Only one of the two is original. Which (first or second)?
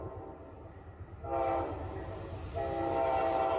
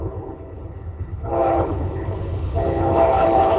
first